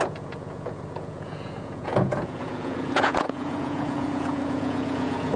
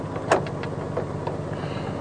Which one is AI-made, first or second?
first